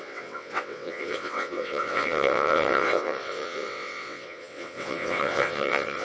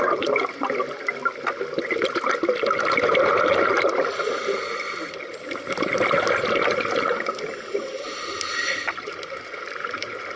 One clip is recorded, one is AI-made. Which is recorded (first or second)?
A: second